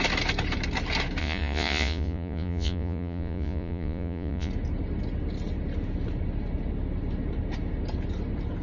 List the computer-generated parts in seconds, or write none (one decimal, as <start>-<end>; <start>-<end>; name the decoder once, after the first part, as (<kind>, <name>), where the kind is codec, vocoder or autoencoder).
1.2-4.5 (vocoder, Vocos)